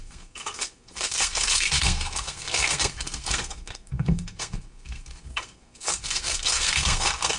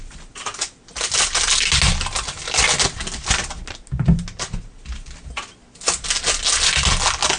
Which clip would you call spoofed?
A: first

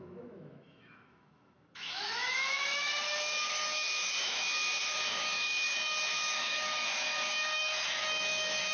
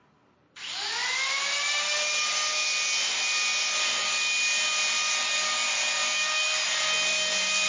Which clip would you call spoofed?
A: first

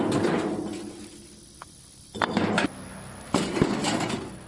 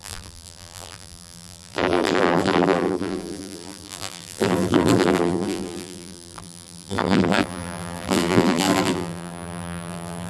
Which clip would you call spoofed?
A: second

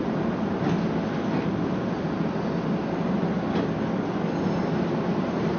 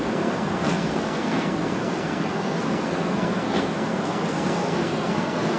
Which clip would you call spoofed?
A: second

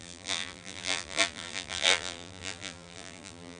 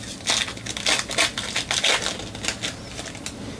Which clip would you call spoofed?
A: first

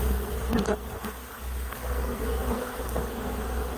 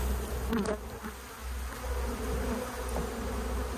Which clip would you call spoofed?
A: first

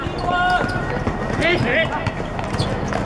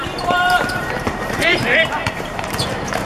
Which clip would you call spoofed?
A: second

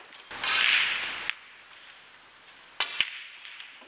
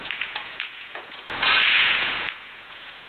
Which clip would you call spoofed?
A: second